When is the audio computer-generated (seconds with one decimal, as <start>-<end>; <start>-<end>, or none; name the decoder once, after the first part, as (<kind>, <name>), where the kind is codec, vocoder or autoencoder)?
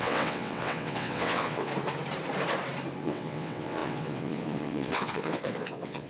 0.0-1.7 (vocoder, WaveNeXt); 3.0-6.1